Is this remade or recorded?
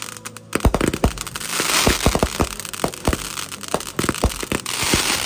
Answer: recorded